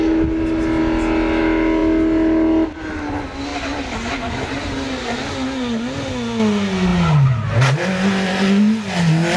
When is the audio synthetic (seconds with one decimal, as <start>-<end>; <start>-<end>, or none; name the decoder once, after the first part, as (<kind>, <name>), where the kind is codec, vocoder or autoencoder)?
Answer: none